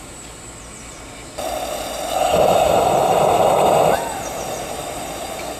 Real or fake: real